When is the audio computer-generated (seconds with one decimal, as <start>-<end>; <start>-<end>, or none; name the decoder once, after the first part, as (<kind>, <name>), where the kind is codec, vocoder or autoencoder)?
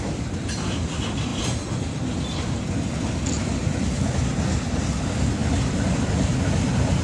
none